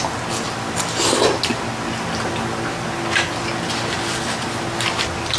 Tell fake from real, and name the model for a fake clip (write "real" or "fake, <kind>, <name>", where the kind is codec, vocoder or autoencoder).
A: real